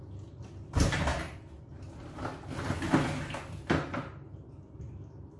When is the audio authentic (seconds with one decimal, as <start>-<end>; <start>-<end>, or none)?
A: 0.0-5.4